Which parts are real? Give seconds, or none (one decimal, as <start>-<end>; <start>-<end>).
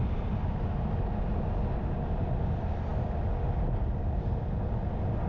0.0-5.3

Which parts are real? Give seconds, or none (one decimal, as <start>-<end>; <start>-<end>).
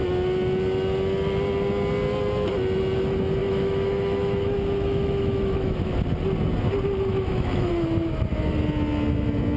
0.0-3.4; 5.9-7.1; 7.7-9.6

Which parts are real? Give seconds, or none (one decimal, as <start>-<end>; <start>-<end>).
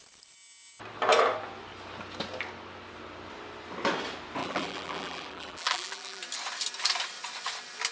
0.0-4.4; 6.2-7.9